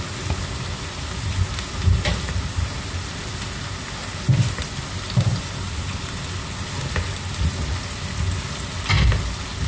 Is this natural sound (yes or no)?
yes